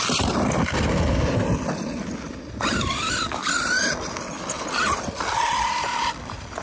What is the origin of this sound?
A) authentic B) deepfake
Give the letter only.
A